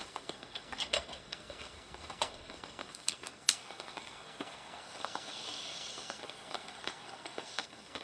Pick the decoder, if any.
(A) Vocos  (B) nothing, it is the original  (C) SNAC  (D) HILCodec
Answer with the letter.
C